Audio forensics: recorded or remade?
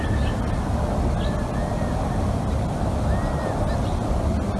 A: recorded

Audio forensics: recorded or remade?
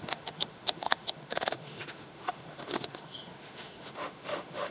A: remade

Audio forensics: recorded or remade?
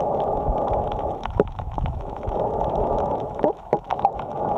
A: remade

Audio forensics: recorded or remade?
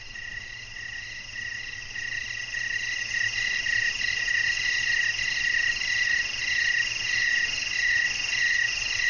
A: recorded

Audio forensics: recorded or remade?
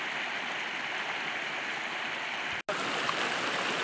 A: recorded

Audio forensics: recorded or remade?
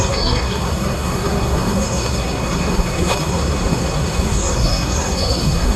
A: remade